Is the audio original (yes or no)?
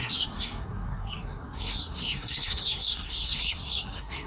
no